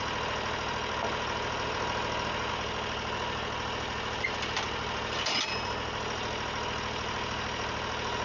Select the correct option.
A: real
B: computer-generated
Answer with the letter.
A